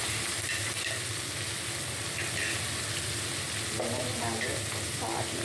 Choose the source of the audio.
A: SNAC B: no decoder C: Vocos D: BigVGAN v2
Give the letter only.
B